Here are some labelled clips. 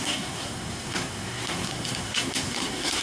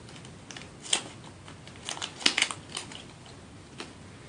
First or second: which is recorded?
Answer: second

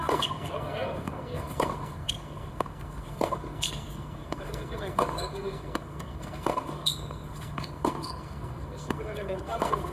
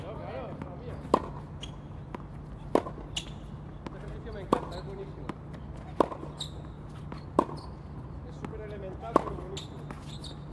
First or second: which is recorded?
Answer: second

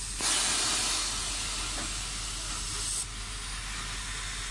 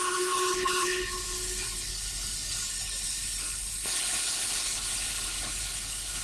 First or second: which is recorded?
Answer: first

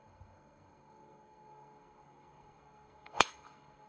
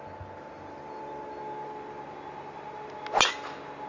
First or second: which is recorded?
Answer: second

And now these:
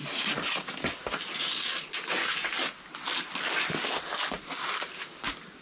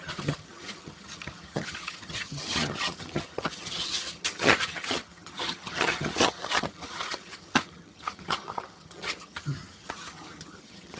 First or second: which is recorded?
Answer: first